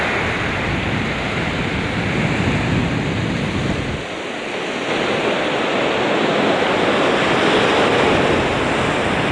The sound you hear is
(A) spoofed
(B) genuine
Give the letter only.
B